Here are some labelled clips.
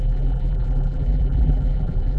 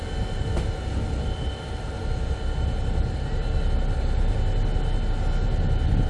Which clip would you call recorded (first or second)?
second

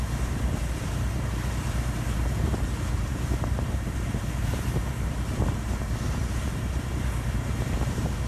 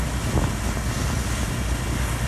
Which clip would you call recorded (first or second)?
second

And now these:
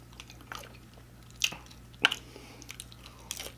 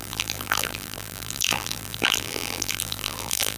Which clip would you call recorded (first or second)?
first